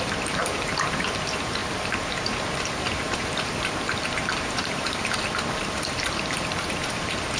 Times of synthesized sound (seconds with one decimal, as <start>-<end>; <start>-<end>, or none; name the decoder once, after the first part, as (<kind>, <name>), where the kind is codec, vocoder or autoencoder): 0.0-7.4 (vocoder, BigVGAN v2)